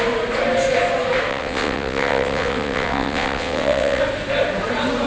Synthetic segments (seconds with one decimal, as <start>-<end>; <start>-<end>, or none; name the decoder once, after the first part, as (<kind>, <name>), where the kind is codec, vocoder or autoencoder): 1.3-4.0 (vocoder, WaveNeXt)